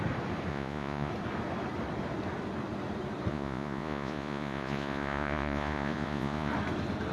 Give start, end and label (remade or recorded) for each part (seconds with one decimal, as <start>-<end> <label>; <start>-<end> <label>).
0.0-0.5 recorded; 0.5-1.1 remade; 1.1-3.3 recorded; 3.3-6.5 remade; 6.5-7.1 recorded